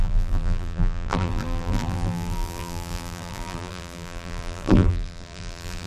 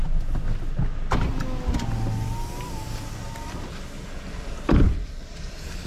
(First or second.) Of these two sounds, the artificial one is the first